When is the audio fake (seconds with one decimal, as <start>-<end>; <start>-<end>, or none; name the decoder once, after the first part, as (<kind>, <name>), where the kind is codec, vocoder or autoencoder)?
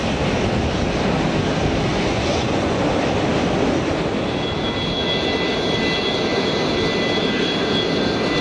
1.9-2.8 (vocoder, Vocos)